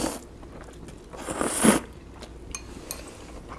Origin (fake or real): real